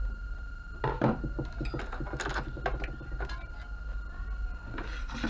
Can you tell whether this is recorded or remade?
recorded